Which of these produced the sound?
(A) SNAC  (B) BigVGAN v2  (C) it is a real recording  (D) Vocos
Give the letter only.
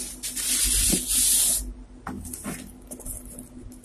C